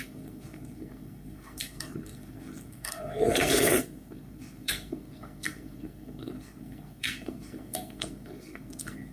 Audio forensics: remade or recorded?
remade